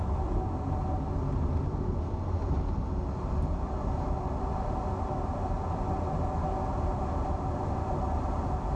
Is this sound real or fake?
real